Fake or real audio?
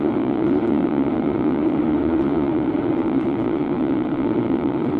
fake